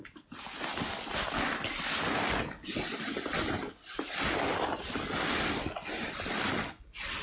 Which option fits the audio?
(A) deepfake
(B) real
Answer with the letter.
B